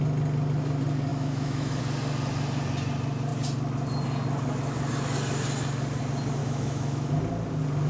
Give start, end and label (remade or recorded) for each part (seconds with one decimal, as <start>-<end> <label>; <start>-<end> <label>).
0.0-1.1 recorded; 1.1-1.8 remade; 1.8-6.4 recorded; 6.4-7.1 remade; 7.1-7.9 recorded